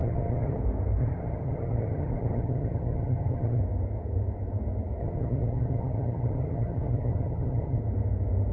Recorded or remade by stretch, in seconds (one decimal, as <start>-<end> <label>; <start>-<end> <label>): 0.0-0.6 remade; 0.6-1.0 recorded; 1.0-3.6 remade; 3.6-5.0 recorded; 5.0-7.8 remade; 7.8-8.5 recorded